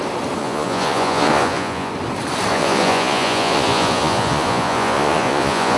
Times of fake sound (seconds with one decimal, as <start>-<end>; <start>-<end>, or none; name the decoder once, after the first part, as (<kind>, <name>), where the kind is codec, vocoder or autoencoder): 0.4-1.9 (vocoder, Vocos); 2.5-5.8